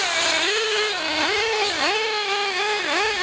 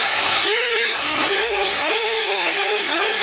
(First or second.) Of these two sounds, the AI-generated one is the second